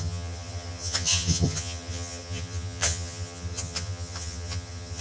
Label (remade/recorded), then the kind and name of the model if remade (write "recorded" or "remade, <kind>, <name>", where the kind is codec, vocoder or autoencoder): remade, vocoder, HiFi-GAN